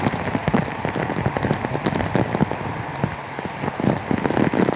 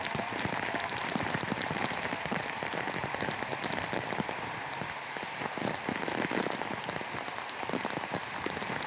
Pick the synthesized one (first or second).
second